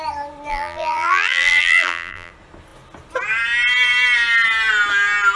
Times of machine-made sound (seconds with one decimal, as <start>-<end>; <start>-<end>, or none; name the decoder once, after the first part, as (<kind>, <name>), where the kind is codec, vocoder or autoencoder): 0.5-2.3 (vocoder, BigVGAN v2)